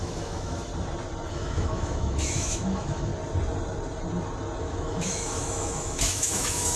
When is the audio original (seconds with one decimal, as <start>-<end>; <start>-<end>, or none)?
0.7-1.3; 3.1-4.6